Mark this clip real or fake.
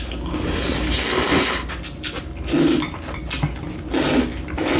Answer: real